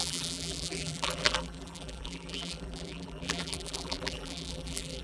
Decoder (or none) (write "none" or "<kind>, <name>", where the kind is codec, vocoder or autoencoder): vocoder, BigVGAN v2